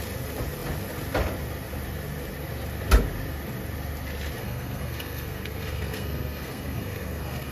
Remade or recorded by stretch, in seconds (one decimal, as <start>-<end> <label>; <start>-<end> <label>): 0.0-4.4 recorded; 4.4-7.5 remade